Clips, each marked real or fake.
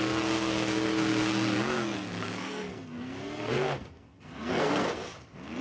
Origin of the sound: fake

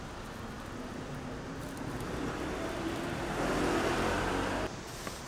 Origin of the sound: real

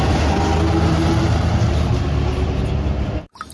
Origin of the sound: real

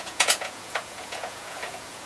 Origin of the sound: fake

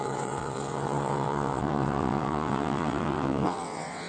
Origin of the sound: fake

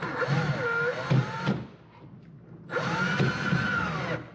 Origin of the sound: real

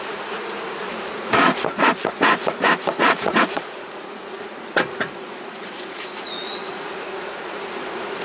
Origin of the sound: fake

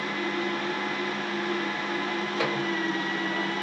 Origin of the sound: real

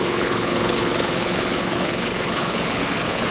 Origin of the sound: fake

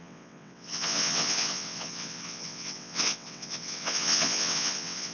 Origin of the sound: fake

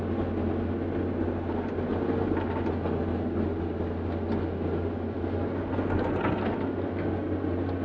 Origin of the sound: real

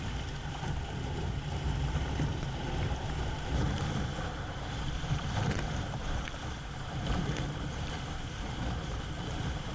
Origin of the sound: fake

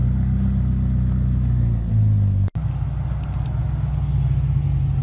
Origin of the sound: real